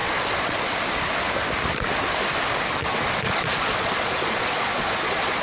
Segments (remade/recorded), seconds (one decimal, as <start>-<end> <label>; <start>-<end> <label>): 0.0-0.7 remade; 0.7-2.8 recorded; 2.8-5.4 remade